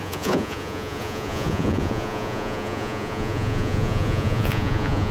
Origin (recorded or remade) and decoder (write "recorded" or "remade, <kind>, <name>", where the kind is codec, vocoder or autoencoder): remade, vocoder, Vocos